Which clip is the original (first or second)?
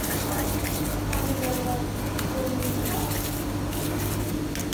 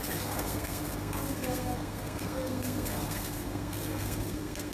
first